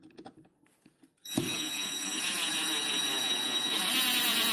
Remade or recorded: remade